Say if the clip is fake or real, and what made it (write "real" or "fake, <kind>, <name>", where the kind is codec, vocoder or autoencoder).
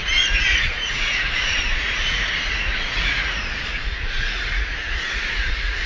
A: fake, vocoder, Vocos